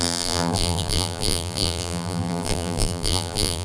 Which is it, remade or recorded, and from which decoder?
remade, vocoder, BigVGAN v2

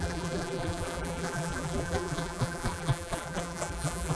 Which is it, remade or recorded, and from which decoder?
remade, vocoder, BigVGAN v2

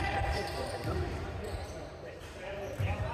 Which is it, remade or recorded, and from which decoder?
remade, vocoder, BigVGAN v2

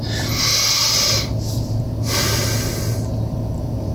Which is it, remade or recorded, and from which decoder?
recorded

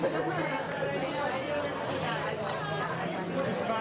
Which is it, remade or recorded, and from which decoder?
recorded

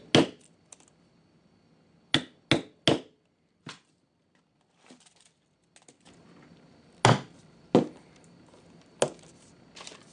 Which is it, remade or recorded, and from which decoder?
recorded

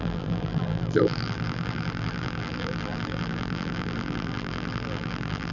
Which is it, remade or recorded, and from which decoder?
remade, vocoder, BigVGAN v2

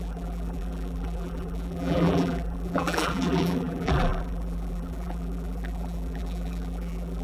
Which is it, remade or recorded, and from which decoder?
remade, vocoder, BigVGAN v2